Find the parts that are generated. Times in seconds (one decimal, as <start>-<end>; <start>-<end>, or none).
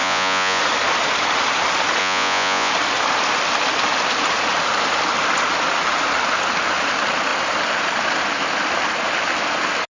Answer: 0.0-0.6; 2.0-2.7